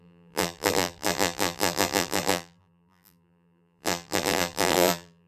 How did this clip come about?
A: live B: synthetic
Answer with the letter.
B